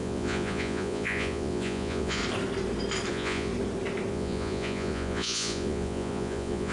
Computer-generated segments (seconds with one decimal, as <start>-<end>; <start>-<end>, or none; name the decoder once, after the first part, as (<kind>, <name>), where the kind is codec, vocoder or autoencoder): 0.0-2.2 (vocoder, Vocos); 3.1-3.5; 4.1-6.7